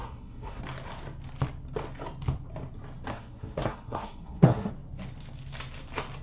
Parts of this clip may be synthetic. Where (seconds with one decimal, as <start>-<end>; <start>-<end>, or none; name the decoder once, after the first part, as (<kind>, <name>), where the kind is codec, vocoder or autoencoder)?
0.0-0.6 (codec, SNAC); 3.1-4.7